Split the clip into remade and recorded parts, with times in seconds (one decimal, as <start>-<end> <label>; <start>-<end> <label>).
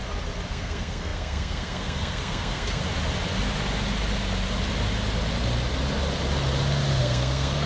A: 0.0-0.5 recorded; 0.5-2.8 remade; 2.8-7.0 recorded; 7.0-7.7 remade